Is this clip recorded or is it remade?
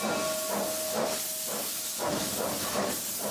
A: recorded